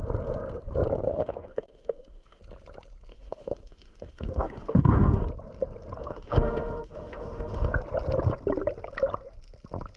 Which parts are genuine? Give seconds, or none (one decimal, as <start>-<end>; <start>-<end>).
0.0-1.1; 2.4-3.1; 5.2-6.0; 7.7-10.0